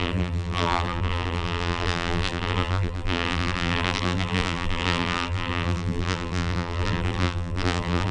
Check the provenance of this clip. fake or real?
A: fake